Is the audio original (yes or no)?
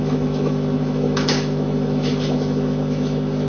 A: no